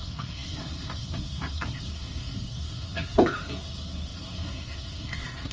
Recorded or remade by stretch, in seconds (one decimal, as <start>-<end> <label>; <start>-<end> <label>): 0.0-5.5 remade